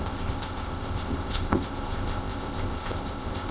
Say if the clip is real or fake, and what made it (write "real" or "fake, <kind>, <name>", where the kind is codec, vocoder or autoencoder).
fake, codec, ZipCodec